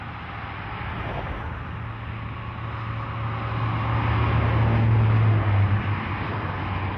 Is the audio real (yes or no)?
yes